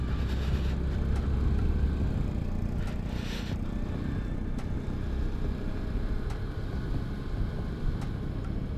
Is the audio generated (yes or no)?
no